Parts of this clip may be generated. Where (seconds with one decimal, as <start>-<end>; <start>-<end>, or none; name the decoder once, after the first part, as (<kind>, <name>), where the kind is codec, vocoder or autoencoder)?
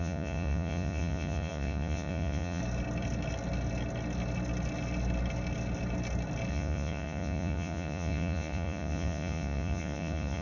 0.0-2.6 (vocoder, Vocos); 6.5-10.4